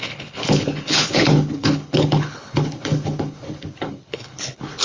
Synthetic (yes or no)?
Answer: yes